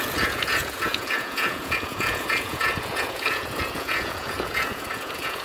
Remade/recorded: remade